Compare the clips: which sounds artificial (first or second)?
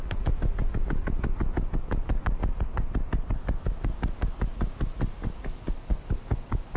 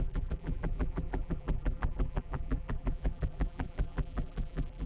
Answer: second